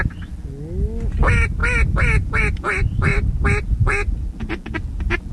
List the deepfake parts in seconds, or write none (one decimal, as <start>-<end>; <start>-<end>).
none